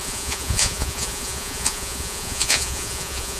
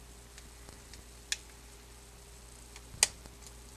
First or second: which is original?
second